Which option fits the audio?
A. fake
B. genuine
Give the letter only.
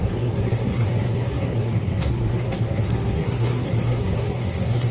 A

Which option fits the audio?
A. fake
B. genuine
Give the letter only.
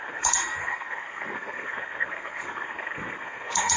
A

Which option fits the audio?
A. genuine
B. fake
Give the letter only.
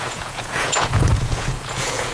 B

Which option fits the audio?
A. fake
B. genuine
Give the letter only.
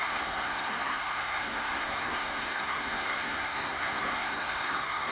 A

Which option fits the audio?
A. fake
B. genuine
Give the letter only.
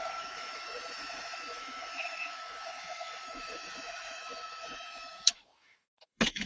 A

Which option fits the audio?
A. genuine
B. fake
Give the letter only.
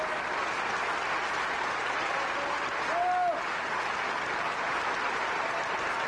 A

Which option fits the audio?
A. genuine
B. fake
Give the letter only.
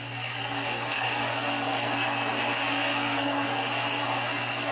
B